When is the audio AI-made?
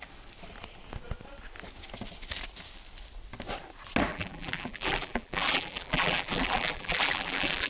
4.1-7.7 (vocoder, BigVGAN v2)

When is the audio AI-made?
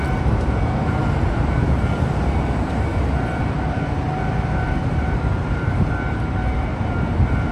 0.0-7.5 (vocoder, BigVGAN v2)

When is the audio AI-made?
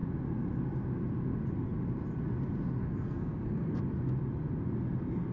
2.8-3.8 (codec, SNAC)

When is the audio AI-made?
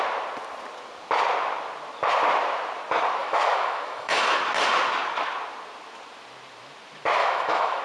3.2-4.4 (autoencoder, DAC-VAE); 7.2-7.8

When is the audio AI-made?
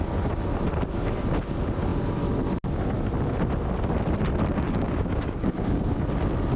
4.5-6.0 (codec, DAC)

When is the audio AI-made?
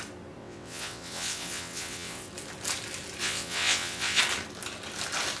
0.4-2.3 (vocoder, WaveNeXt); 3.2-4.2